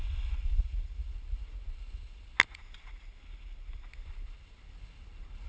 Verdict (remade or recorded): recorded